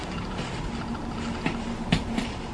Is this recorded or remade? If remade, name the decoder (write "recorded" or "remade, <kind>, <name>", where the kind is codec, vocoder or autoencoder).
recorded